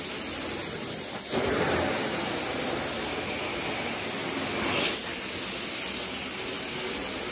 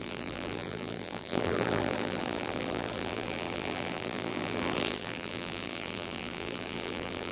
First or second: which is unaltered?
first